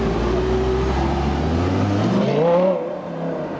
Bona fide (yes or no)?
yes